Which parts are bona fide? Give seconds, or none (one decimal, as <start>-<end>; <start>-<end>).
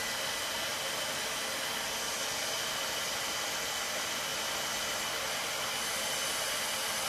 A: 0.0-0.7; 1.8-7.1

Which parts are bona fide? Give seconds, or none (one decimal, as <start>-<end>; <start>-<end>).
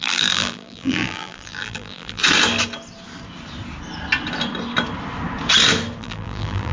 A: 2.2-6.0